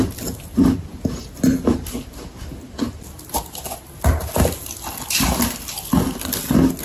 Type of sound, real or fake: real